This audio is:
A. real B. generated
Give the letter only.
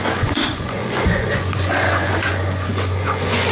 B